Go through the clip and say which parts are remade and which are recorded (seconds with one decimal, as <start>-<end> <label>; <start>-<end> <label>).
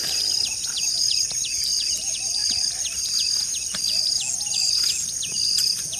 0.0-6.0 recorded